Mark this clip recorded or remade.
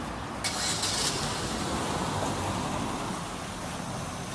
recorded